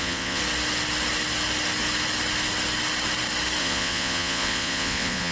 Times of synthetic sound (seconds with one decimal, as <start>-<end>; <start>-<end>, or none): 0.0-0.4; 3.6-5.3